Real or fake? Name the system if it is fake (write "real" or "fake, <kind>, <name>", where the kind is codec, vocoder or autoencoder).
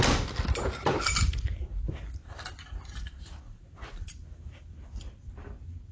real